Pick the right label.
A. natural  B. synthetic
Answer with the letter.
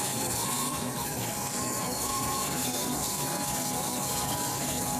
B